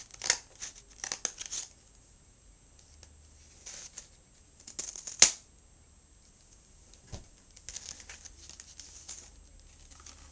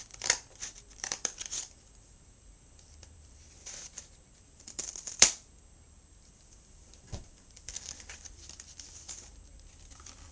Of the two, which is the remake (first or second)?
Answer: second